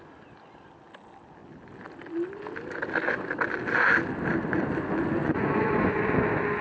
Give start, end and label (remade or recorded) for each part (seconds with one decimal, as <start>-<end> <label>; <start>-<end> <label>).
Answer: 0.0-5.2 recorded; 5.2-6.1 remade; 6.1-6.6 recorded